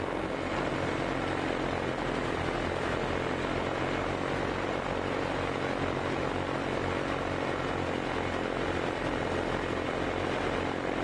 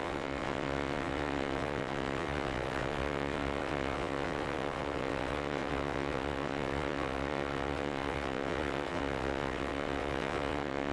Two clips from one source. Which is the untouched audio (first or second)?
first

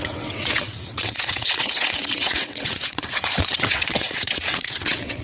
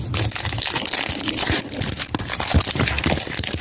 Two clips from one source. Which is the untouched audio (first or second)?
second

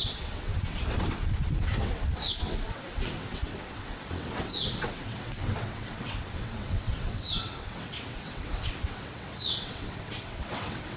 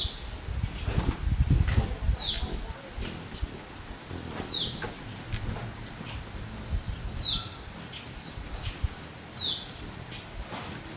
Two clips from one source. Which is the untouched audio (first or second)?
second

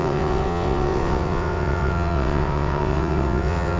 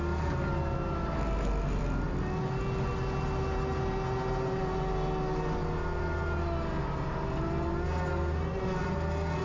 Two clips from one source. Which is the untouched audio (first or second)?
second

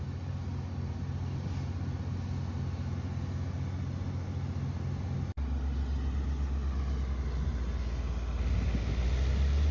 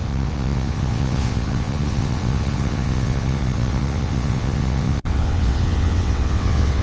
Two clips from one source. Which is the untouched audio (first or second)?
first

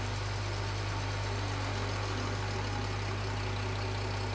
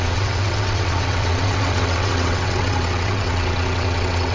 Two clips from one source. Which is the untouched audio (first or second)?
first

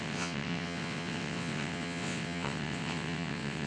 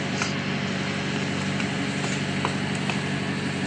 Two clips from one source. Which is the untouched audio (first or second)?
second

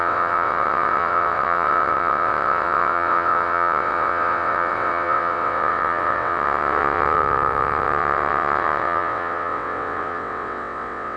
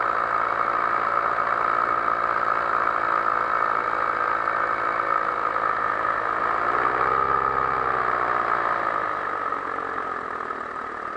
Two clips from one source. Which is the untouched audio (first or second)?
second